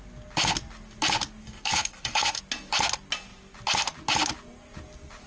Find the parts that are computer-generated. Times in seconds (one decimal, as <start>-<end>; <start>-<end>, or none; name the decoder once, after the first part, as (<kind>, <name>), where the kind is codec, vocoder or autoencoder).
1.4-2.4 (codec, SNAC)

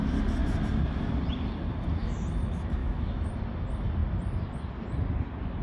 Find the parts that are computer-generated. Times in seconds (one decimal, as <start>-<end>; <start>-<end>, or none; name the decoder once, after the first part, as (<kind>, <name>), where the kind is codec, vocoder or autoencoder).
2.8-3.3 (autoencoder, DAC-VAE)

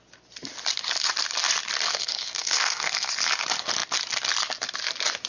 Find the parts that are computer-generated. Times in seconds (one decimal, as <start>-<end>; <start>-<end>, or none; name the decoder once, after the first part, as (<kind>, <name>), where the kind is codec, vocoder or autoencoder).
1.9-3.1 (codec, SNAC)

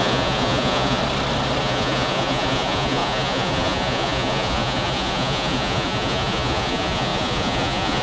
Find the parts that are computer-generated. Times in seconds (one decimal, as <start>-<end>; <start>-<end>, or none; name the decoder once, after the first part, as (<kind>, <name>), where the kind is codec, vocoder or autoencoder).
0.0-1.0 (vocoder, Vocos); 1.6-8.0

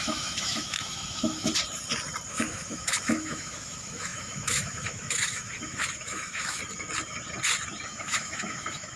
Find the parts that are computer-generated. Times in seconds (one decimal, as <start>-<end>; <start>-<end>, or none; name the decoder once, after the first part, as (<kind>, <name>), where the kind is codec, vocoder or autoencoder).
0.0-1.5 (autoencoder, DAC-VAE); 2.3-6.6; 7.9-9.0

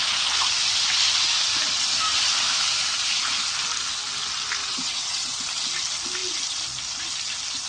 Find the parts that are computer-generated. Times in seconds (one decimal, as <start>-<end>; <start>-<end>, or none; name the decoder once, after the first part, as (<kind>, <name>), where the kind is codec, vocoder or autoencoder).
4.6-5.4 (vocoder, WaveNeXt)

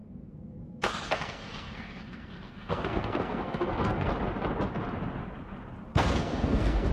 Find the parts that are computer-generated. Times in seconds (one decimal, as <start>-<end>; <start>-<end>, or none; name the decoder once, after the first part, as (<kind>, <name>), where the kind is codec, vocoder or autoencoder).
0.0-4.1 (codec, SNAC); 5.9-6.9

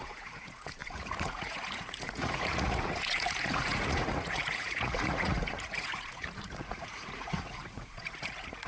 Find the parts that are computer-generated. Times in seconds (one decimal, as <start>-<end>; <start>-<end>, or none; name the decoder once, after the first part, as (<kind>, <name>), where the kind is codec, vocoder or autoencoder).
0.0-8.7 (vocoder, Vocos)